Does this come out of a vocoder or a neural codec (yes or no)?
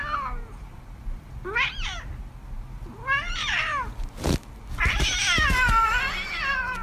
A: no